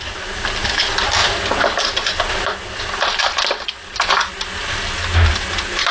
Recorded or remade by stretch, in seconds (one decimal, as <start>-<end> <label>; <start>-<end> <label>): 0.0-5.9 recorded